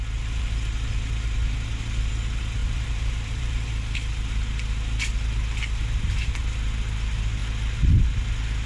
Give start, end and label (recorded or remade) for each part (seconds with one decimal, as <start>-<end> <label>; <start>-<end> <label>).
0.0-2.6 recorded; 2.6-3.7 remade; 3.7-8.7 recorded